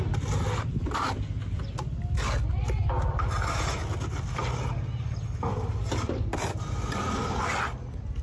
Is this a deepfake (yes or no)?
no